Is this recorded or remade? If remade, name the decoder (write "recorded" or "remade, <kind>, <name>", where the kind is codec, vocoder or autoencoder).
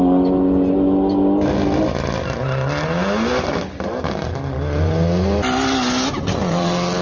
recorded